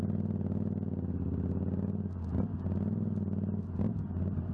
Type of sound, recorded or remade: recorded